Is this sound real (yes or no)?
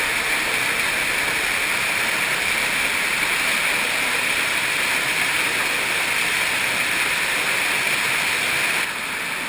yes